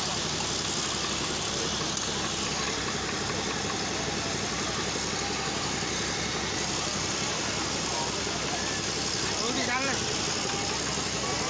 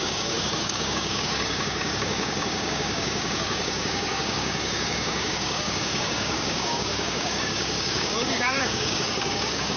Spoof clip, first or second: second